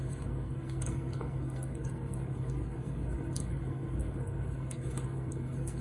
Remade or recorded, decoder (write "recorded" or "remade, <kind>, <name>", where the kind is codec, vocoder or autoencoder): remade, codec, SNAC